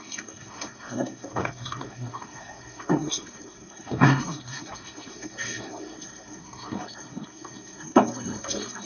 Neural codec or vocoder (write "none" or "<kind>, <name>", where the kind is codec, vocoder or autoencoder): codec, SNAC